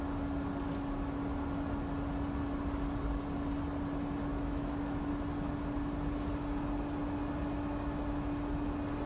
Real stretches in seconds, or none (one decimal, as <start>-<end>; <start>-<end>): 0.0-4.3; 5.1-9.1